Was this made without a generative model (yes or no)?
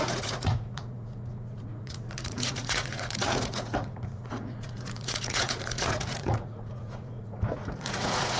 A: no